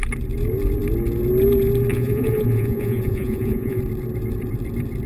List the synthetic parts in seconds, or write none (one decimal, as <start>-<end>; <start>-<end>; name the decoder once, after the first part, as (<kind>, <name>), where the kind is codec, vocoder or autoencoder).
1.9-3.8 (vocoder, Vocos)